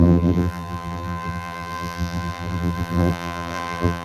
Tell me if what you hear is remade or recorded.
remade